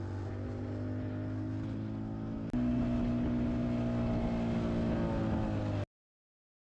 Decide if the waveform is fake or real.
real